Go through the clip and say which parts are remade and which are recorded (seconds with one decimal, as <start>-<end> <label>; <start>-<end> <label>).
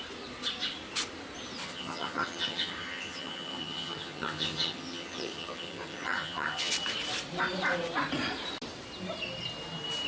0.0-1.6 recorded; 1.6-6.7 remade; 6.7-10.1 recorded